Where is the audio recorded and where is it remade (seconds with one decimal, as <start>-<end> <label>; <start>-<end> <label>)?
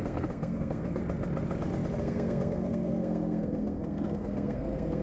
0.0-1.0 remade; 1.0-2.0 recorded; 2.0-5.0 remade